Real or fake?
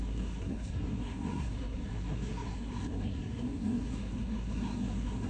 fake